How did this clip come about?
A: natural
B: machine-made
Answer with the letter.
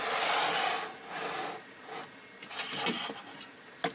A